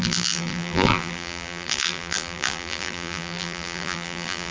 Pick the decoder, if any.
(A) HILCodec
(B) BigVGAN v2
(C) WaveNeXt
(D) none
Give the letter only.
B